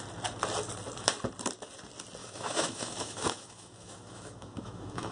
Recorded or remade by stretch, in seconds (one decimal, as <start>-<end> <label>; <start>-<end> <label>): 0.0-2.2 recorded; 2.2-5.1 remade